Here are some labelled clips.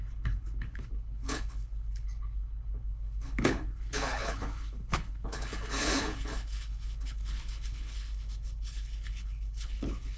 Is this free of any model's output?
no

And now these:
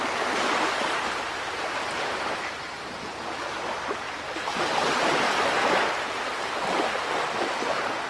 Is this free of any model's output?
yes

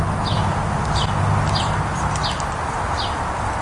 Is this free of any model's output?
yes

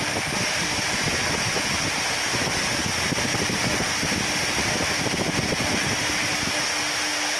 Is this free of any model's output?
yes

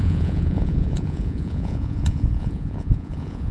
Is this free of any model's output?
no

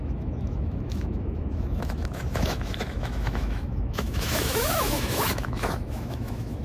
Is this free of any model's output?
no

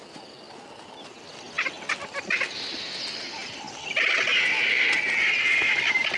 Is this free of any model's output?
yes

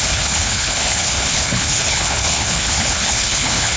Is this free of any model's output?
no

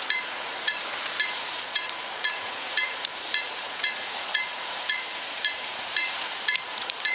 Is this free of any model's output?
no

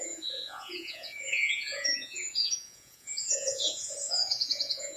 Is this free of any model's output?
no